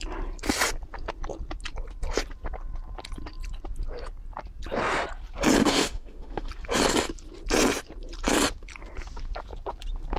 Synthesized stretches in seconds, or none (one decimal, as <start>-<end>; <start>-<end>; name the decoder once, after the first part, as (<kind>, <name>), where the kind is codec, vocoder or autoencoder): 5.6-6.5 (autoencoder, DAC-VAE)